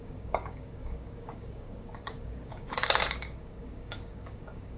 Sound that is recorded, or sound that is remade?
remade